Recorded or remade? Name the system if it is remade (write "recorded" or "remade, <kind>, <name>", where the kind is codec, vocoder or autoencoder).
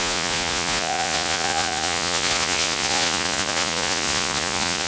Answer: remade, vocoder, Vocos